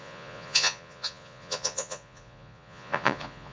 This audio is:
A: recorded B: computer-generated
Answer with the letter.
B